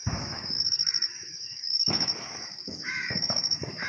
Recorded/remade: remade